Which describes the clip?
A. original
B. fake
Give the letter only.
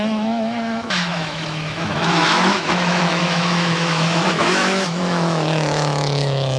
B